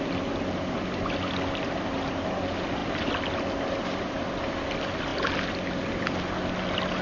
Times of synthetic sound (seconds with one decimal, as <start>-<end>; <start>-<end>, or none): none